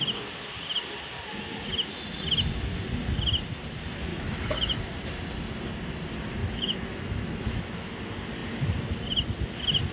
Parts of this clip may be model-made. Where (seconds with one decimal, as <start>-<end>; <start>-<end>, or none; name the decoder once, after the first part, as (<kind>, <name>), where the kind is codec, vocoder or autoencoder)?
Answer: 4.1-4.8 (autoencoder, DAC-VAE); 6.4-7.9